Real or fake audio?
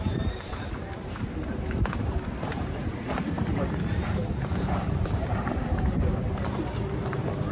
fake